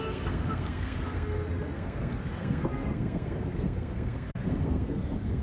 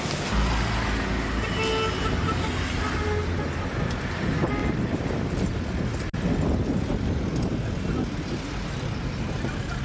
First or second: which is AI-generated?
first